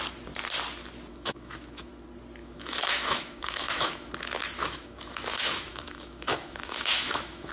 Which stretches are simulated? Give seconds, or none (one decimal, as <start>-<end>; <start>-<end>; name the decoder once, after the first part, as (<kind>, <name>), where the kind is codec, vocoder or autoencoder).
1.1-1.9 (autoencoder, DAC-VAE); 2.4-4.1; 4.6-7.5